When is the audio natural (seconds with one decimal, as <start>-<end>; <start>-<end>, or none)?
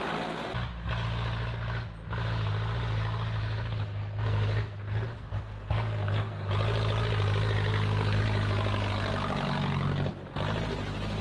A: 0.0-3.4; 6.5-7.7; 8.2-11.2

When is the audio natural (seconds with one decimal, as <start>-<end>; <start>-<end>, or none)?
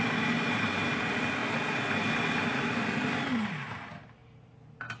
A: 0.0-5.0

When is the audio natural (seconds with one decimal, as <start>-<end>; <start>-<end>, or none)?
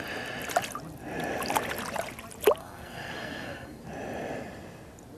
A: 0.0-2.6; 3.8-5.2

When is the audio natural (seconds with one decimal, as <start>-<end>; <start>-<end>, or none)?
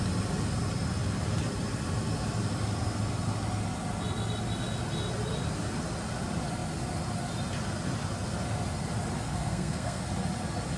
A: 0.0-9.3; 10.0-10.8